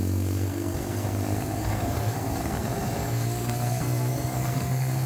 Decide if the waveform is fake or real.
fake